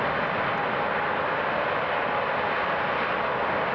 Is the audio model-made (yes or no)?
no